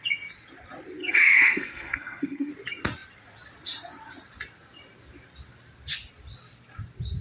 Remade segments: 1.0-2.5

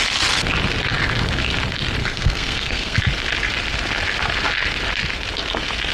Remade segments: 2.0-3.0

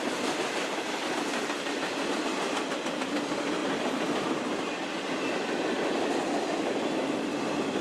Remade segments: none

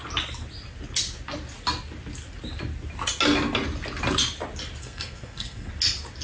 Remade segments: 4.8-5.7

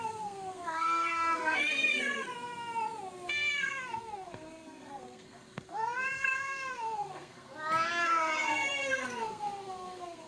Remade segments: 0.0-2.3; 3.3-7.5; 8.0-10.3